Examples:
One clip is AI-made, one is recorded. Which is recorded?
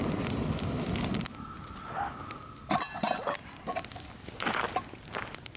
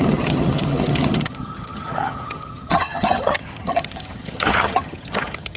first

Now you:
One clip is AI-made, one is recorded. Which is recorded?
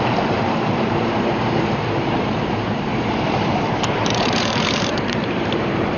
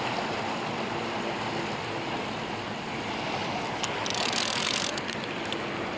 second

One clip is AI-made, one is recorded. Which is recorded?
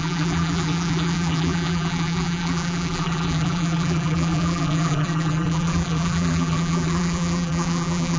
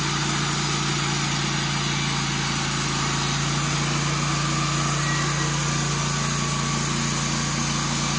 second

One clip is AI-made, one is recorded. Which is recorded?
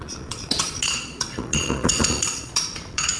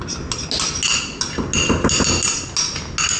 second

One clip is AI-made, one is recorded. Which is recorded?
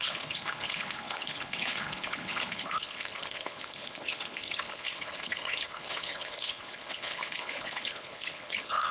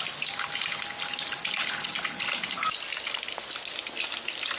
second